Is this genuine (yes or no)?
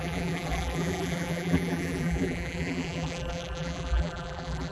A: no